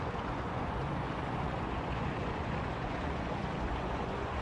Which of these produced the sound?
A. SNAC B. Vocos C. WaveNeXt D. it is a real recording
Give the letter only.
B